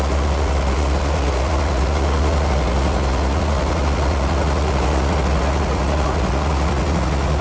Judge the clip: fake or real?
fake